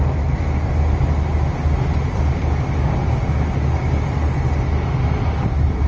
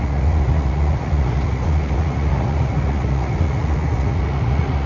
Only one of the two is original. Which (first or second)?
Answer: first